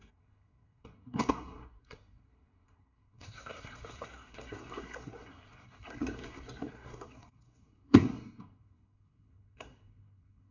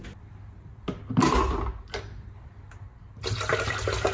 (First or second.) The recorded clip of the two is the second